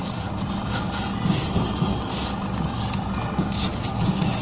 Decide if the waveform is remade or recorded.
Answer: recorded